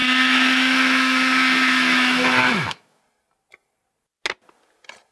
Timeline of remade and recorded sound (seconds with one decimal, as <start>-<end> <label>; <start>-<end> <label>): 0.0-3.0 remade; 3.0-5.1 recorded